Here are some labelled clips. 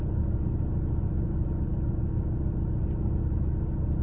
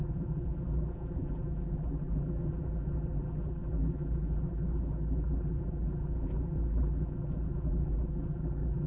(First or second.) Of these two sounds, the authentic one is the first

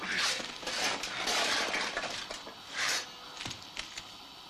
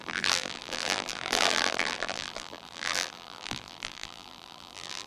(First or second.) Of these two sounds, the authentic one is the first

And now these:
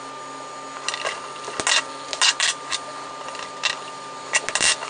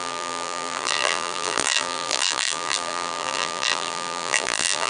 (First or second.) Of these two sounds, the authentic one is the first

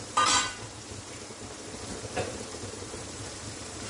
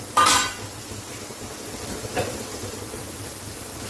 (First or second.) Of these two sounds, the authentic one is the second